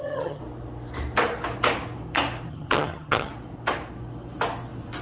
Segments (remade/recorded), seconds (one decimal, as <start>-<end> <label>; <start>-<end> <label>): 0.0-0.4 remade; 0.4-2.5 recorded; 2.5-3.3 remade; 3.3-5.0 recorded